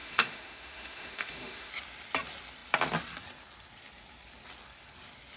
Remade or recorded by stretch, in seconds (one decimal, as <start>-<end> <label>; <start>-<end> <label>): 0.0-1.7 remade; 1.7-5.4 recorded